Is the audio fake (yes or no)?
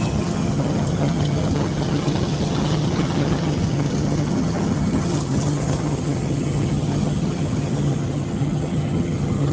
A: yes